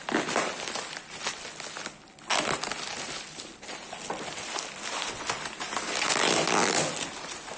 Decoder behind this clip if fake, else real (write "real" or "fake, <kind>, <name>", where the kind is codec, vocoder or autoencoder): real